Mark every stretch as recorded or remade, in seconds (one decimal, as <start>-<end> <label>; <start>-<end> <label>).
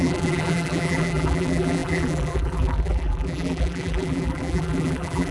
0.0-5.3 remade